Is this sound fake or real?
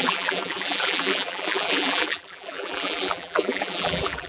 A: fake